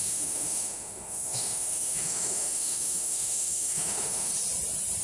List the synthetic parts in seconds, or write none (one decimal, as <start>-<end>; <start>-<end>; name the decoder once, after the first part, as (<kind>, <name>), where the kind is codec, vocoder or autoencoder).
0.0-4.3 (autoencoder, DAC-VAE)